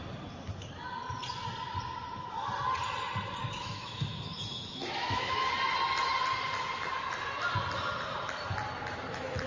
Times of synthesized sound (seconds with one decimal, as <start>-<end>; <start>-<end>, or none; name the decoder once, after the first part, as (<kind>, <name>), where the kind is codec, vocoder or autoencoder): 3.4-5.5 (autoencoder, DAC-VAE)